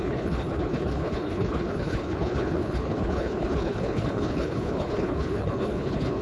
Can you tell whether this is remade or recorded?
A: remade